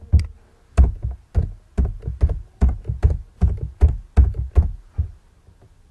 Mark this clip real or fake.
real